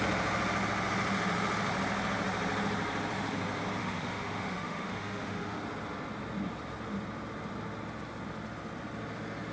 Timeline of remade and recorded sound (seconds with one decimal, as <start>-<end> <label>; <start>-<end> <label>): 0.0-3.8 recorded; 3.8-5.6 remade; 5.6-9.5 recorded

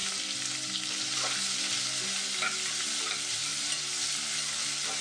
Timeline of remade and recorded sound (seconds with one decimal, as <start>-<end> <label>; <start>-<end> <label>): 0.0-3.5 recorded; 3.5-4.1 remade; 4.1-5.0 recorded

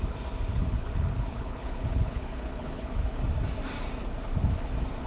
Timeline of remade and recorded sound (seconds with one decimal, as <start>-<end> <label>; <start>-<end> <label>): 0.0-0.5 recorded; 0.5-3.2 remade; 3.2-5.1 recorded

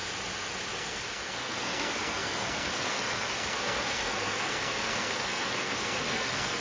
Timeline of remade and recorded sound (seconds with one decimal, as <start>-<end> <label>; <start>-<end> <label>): 0.0-0.7 recorded; 0.7-6.6 remade